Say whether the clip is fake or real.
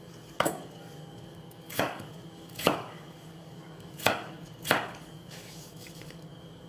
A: fake